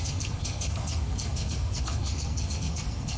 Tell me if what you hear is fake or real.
fake